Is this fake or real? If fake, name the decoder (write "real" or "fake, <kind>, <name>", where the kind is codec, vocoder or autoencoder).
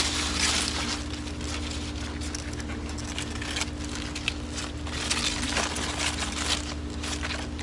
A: real